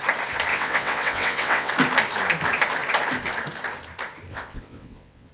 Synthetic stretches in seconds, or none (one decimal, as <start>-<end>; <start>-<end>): 0.5-1.7; 4.3-5.3

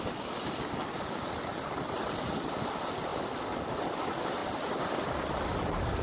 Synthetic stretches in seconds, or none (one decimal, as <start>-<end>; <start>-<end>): none

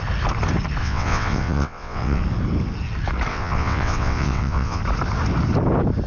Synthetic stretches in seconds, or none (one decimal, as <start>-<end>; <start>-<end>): 0.8-2.2; 3.3-4.8

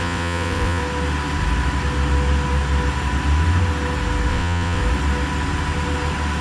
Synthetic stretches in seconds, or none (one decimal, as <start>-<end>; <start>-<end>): 0.0-0.8; 4.3-4.8

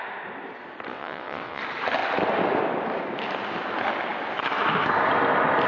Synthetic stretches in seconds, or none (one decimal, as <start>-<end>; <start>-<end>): 0.9-1.6

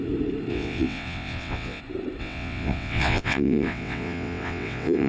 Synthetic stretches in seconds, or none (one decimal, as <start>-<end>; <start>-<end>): 0.5-1.8; 2.2-5.1

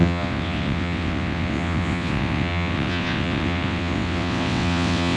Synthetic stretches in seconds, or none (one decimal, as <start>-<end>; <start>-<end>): 0.0-5.2

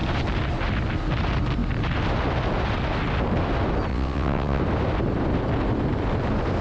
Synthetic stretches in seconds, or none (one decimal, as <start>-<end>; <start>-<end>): 3.9-4.6